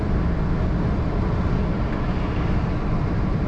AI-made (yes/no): no